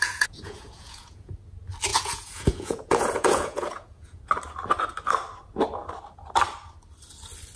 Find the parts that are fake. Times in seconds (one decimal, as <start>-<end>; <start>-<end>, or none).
0.0-1.3; 1.9-4.2